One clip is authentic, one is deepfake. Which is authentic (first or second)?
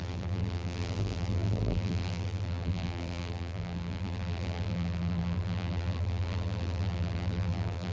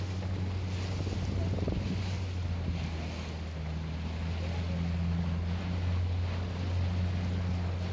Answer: second